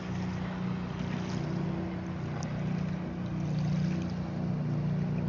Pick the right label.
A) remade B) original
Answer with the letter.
B